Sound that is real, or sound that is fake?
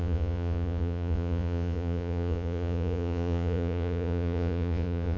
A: fake